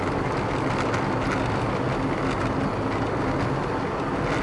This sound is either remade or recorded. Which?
recorded